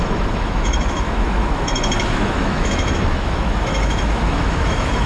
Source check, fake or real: fake